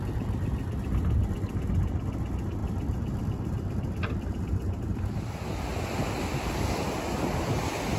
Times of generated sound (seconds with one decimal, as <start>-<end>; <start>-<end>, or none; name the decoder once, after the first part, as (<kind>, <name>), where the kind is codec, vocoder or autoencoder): none